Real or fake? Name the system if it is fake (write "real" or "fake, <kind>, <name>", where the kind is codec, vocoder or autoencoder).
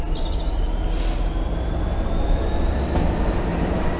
real